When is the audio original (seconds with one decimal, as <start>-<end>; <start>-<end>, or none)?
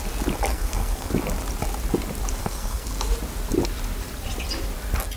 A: 0.0-0.5; 1.1-2.4; 2.9-5.2